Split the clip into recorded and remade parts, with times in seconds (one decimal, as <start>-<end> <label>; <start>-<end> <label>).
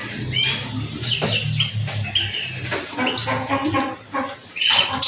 0.0-5.1 recorded